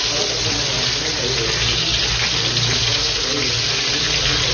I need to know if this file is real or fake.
real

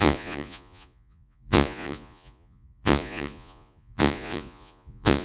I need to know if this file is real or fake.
fake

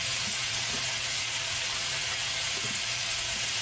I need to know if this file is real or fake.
fake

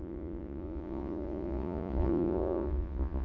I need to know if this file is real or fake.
fake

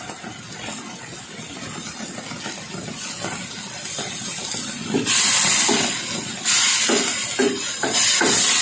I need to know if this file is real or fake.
real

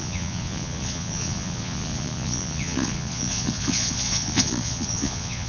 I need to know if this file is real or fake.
fake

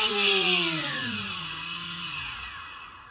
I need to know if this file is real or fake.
fake